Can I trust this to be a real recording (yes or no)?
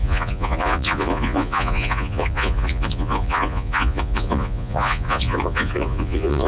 no